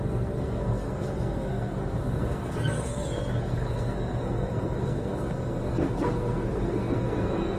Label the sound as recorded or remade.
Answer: remade